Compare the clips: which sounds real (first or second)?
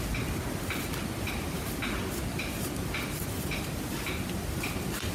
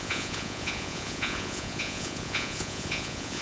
first